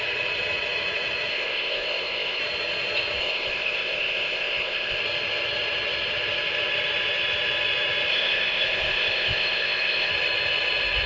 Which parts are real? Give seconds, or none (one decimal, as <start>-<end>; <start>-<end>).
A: 0.0-1.3; 2.4-3.2; 5.0-8.1; 10.1-11.1